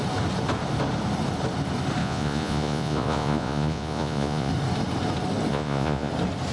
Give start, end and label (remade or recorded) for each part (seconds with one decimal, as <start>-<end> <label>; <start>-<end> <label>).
0.0-2.0 recorded; 2.0-4.5 remade; 4.5-5.5 recorded; 5.5-6.1 remade; 6.1-6.5 recorded